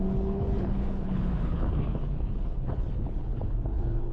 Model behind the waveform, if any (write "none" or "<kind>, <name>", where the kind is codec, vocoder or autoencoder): codec, HILCodec